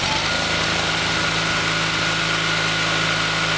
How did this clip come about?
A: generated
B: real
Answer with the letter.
B